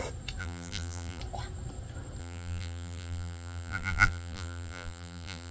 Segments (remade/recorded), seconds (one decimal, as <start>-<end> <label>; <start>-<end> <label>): 0.0-0.4 recorded; 0.4-1.2 remade; 1.2-2.2 recorded; 2.2-5.5 remade